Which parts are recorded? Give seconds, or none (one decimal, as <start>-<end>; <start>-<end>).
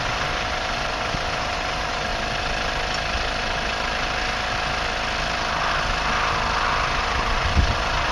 2.1-7.0